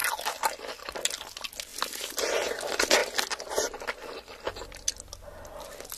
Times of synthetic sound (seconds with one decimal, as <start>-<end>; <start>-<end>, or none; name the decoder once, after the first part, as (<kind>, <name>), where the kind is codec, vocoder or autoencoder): none